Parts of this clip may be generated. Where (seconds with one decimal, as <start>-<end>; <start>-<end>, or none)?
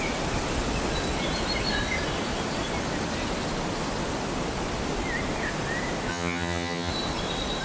6.1-6.9